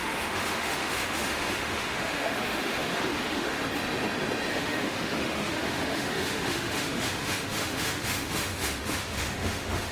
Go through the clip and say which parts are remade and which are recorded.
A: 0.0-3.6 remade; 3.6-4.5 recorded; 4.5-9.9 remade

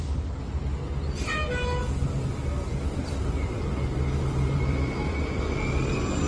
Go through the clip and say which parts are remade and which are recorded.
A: 0.0-1.8 recorded; 1.8-5.4 remade; 5.4-6.3 recorded

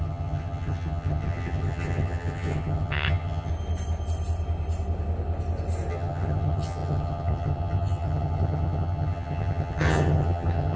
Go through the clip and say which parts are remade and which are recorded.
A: 0.0-3.5 remade; 3.5-5.9 recorded; 5.9-10.8 remade

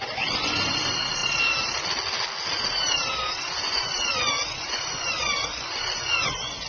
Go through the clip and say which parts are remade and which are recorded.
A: 0.0-1.2 remade; 1.2-3.5 recorded; 3.5-6.7 remade

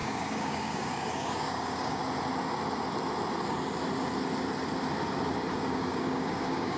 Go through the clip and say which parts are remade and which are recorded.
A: 0.0-2.0 remade; 2.0-5.5 recorded; 5.5-6.8 remade

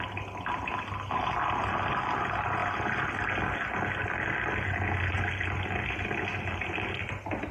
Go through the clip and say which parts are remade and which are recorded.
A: 0.0-7.5 recorded

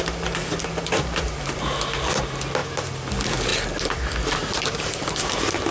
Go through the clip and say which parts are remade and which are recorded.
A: 0.0-5.7 recorded

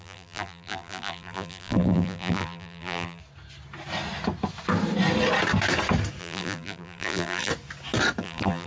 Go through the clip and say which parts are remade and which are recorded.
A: 0.0-3.2 remade; 3.2-6.2 recorded; 6.2-7.5 remade; 7.5-8.2 recorded; 8.2-8.7 remade